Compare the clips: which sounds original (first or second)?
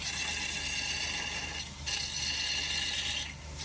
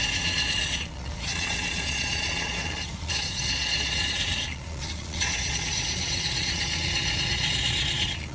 first